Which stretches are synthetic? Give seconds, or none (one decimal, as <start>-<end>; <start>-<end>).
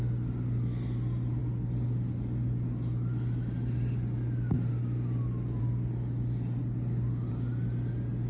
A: none